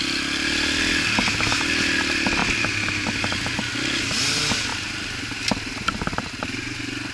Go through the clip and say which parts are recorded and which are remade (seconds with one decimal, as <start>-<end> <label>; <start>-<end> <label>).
0.0-7.1 recorded